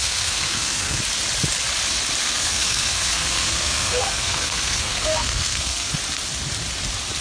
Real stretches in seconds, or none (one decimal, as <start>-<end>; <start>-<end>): 1.0-2.2; 5.9-7.2